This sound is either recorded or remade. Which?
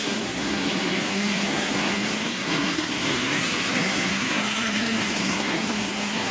remade